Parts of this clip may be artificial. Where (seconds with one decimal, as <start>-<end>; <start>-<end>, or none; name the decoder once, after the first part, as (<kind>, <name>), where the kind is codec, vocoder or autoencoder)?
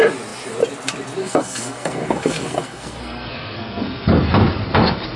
1.2-4.3 (codec, SNAC)